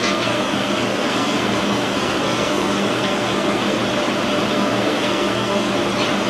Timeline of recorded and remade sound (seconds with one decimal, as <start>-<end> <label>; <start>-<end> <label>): 0.0-3.8 remade; 3.8-4.5 recorded; 4.5-5.7 remade; 5.7-6.3 recorded